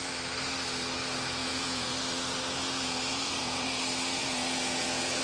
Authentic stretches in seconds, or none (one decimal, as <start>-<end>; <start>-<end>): 0.0-1.4; 2.0-3.1; 3.8-4.2